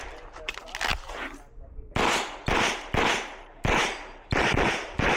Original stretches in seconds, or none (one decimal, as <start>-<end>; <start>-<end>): 0.0-5.2